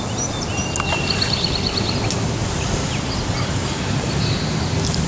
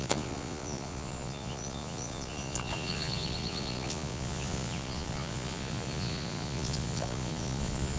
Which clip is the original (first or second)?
first